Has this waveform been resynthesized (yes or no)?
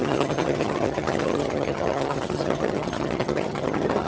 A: yes